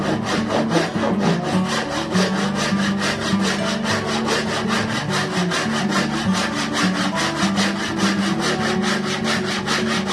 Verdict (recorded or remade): recorded